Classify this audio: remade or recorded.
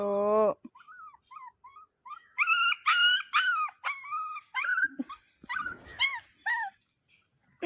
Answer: recorded